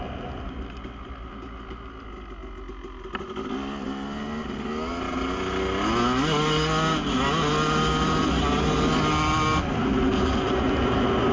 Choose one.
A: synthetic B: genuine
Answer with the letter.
B